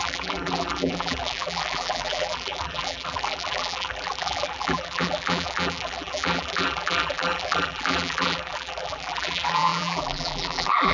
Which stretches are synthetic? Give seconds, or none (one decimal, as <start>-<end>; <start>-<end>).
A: 0.0-10.9